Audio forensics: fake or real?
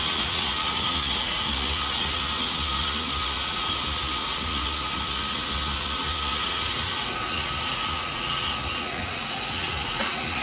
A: fake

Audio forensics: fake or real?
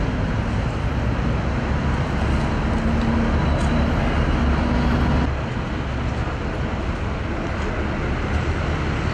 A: real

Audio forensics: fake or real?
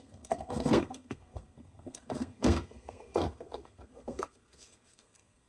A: fake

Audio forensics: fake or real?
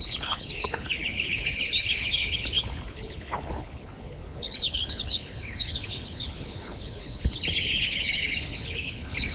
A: fake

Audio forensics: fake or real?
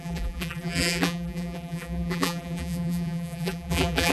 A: fake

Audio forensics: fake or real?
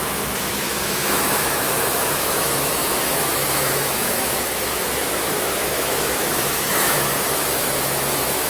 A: fake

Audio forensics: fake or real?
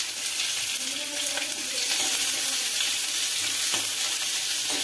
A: real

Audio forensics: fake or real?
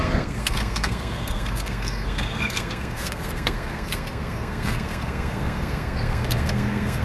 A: fake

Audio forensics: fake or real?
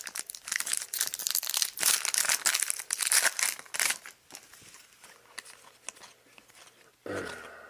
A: real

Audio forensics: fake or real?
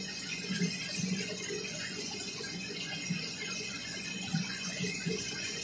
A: fake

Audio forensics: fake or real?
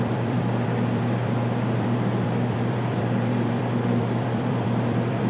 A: fake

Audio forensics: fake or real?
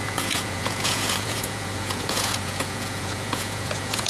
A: fake